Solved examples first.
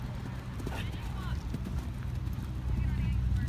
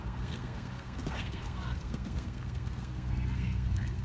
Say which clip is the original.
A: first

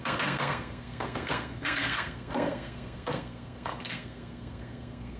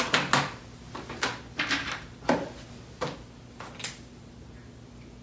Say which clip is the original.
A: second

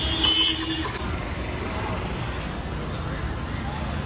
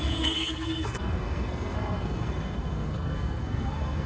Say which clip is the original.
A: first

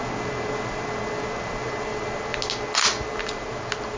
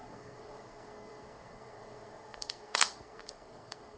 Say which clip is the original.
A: first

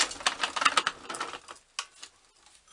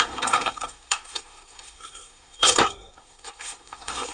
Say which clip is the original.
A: first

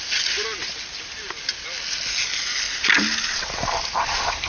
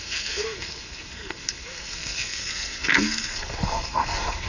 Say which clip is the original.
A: first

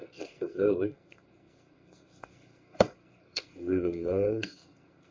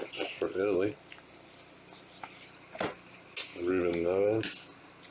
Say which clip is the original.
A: second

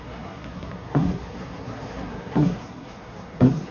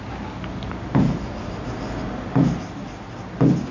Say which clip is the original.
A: second